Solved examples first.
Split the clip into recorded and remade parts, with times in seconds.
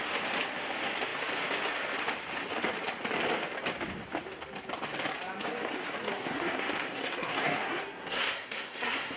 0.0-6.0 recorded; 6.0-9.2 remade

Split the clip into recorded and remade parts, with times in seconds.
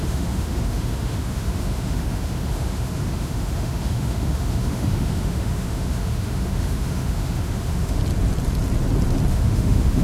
0.0-8.0 remade; 8.0-9.3 recorded; 9.3-10.0 remade